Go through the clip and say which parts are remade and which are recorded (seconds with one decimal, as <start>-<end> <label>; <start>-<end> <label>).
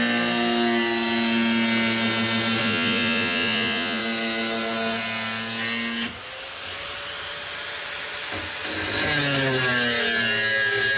0.0-2.6 recorded; 2.6-4.0 remade; 4.0-11.0 recorded